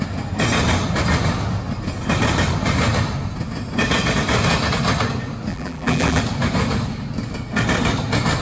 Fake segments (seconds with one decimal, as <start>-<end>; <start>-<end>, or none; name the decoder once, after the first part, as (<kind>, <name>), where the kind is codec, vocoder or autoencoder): 5.5-6.2 (vocoder, BigVGAN v2)